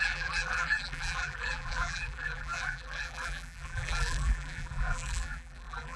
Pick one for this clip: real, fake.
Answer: fake